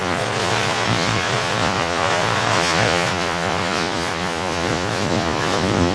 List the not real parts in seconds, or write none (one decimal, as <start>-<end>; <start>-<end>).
0.0-5.9